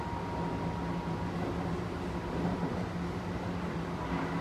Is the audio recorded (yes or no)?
yes